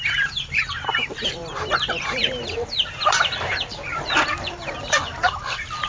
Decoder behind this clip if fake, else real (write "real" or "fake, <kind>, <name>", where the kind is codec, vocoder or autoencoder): fake, vocoder, BigVGAN v2